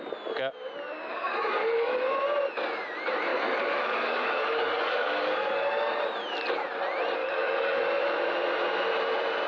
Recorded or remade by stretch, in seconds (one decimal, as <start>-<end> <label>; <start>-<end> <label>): 0.0-1.1 recorded; 1.1-1.9 remade; 1.9-3.3 recorded; 3.3-6.0 remade; 6.0-7.2 recorded; 7.2-7.8 remade; 7.8-9.5 recorded

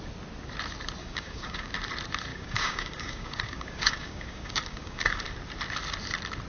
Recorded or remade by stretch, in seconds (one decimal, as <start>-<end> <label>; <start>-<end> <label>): 0.0-1.0 recorded; 1.0-1.7 remade; 1.7-2.3 recorded; 2.3-5.3 remade; 5.3-6.5 recorded

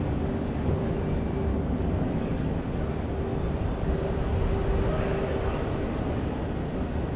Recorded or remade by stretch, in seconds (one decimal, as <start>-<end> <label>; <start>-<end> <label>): 0.0-1.5 recorded; 1.5-2.6 remade; 2.6-7.2 recorded

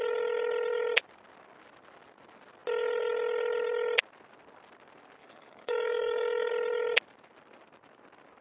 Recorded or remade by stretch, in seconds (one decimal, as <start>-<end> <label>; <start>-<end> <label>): 0.0-5.2 recorded; 5.2-6.5 remade; 6.5-8.4 recorded